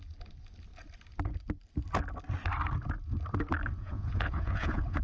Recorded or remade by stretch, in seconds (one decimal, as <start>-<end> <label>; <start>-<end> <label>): 0.0-3.8 recorded; 3.8-5.0 remade